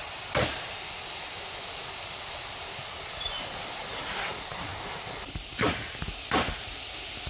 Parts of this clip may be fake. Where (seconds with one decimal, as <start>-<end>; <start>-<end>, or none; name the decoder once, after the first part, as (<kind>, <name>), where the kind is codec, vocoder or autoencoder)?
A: none